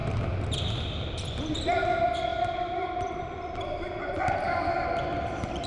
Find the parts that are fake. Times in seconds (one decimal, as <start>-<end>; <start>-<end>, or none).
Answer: 0.0-1.5; 2.3-5.7